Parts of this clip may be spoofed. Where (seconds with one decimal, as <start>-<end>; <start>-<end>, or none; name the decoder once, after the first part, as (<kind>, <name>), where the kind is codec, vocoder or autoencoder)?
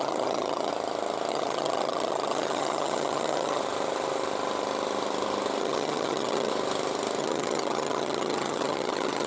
0.0-0.7 (vocoder, HiFi-GAN); 1.3-3.6; 5.6-6.5; 7.2-9.3